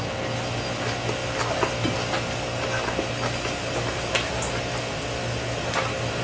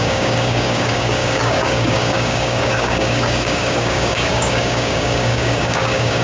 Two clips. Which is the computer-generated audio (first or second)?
second